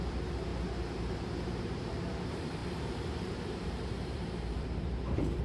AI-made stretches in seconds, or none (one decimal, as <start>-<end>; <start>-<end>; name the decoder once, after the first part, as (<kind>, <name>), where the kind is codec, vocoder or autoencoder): 0.0-5.4 (vocoder, BigVGAN v2)